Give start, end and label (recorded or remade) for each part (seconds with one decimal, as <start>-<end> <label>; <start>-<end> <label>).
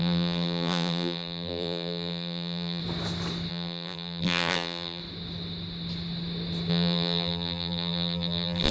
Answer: 0.0-2.8 remade; 2.8-3.5 recorded; 3.5-5.0 remade; 5.0-6.7 recorded; 6.7-8.7 remade